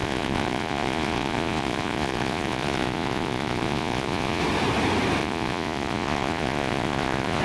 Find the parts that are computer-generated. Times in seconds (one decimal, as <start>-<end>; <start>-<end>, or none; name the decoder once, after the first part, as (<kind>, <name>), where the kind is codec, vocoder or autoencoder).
0.0-4.4 (vocoder, Vocos); 5.2-7.4